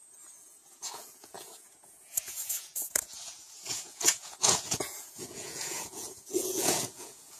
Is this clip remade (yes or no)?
yes